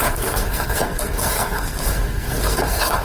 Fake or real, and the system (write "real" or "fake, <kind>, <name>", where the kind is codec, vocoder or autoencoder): fake, codec, SNAC